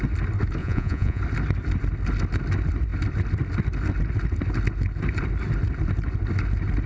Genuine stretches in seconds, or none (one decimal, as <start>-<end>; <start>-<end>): 0.0-0.6; 1.2-6.9